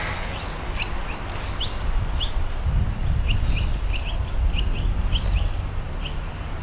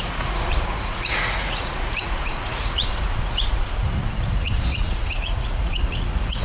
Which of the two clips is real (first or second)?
first